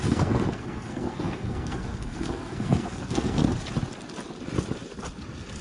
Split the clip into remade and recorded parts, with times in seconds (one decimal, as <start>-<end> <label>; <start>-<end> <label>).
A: 0.0-3.4 remade; 3.4-5.6 recorded